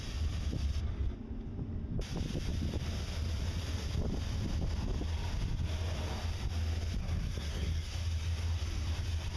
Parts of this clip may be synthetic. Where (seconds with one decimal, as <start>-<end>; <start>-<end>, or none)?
7.0-7.9